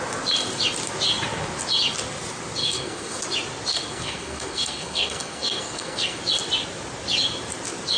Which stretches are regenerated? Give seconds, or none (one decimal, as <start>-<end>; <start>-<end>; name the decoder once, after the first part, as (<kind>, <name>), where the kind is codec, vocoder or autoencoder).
2.6-3.2 (codec, SNAC); 3.7-6.2